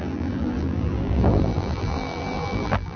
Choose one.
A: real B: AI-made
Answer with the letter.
B